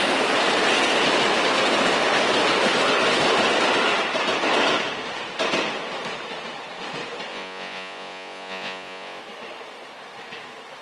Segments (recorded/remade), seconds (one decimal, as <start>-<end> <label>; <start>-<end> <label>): 0.0-7.3 recorded; 7.3-9.2 remade; 9.2-10.8 recorded